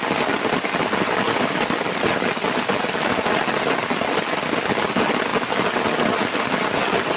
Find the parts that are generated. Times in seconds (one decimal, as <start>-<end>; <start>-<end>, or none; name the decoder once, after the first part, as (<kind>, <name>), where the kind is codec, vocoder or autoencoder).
none